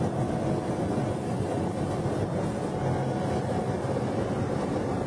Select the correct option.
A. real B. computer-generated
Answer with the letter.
A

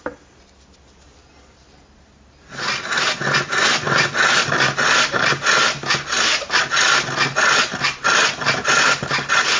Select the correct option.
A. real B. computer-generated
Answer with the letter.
A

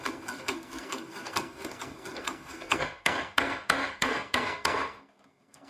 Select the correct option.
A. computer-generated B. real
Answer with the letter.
A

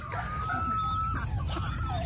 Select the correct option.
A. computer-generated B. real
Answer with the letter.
B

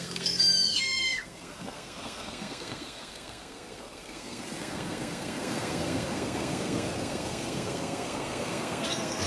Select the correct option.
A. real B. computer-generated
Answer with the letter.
B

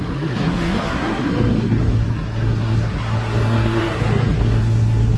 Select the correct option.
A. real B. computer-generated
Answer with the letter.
B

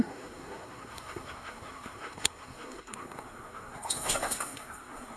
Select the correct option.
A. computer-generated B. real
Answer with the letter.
A